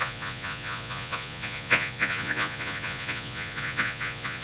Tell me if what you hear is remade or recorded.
remade